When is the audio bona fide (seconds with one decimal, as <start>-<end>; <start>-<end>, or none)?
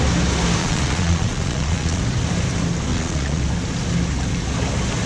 0.0-0.6; 2.0-2.9; 3.4-5.1